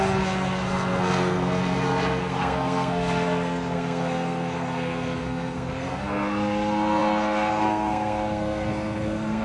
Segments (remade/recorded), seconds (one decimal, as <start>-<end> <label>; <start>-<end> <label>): 0.0-9.4 remade